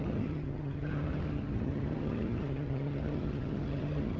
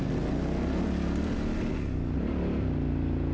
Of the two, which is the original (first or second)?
second